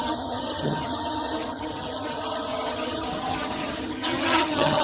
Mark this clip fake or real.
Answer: fake